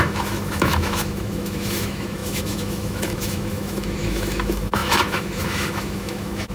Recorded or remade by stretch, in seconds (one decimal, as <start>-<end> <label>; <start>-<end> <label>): 0.0-6.5 remade